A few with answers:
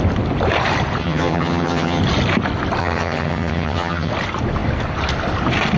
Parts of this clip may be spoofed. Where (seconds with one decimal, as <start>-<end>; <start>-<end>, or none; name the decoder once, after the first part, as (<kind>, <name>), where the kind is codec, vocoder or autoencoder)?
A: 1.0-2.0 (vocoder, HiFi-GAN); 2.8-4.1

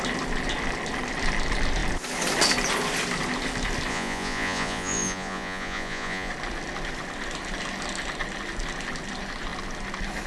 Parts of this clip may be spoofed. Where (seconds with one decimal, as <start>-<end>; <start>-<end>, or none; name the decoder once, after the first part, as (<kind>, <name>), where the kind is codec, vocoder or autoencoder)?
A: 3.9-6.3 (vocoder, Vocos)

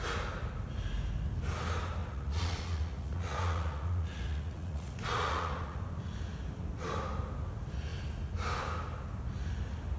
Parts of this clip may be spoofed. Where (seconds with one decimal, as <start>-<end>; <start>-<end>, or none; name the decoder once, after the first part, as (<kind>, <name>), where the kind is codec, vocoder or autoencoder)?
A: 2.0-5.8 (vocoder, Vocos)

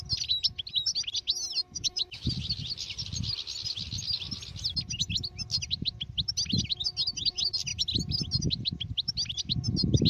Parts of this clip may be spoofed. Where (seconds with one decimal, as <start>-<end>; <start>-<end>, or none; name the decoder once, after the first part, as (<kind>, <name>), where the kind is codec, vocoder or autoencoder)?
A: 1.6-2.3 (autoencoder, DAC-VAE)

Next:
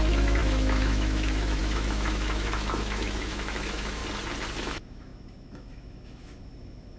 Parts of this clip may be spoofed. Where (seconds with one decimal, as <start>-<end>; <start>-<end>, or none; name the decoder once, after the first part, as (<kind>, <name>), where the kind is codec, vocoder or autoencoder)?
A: 0.0-4.0 (autoencoder, DAC-VAE); 4.6-7.0

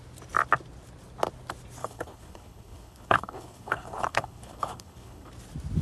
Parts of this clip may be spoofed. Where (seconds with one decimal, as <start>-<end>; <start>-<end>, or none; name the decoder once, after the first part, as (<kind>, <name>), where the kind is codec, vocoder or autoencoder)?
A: 1.8-5.3 (codec, HILCodec)

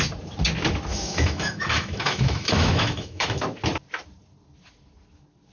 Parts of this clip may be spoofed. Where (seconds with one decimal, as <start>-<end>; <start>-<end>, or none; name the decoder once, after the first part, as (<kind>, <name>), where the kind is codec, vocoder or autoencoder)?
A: 0.9-3.4 (autoencoder, DAC-VAE)

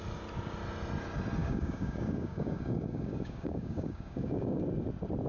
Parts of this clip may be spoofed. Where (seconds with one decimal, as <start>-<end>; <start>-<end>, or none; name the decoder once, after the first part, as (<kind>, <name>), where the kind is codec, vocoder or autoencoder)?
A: 1.4-4.6 (codec, DAC)